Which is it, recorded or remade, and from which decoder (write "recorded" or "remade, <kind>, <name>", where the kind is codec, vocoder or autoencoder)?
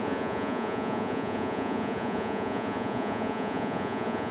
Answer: remade, vocoder, Vocos